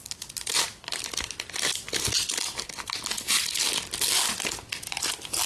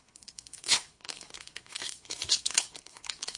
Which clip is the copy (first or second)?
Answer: second